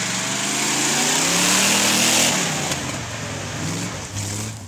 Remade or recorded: recorded